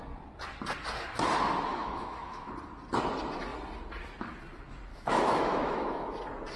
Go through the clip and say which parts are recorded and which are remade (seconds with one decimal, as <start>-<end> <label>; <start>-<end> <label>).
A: 0.0-1.7 recorded; 1.7-2.5 remade; 2.5-4.9 recorded; 4.9-6.1 remade; 6.1-6.6 recorded